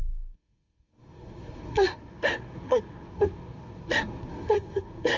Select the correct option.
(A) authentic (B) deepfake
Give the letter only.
B